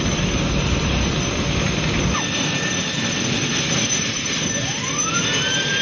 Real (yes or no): no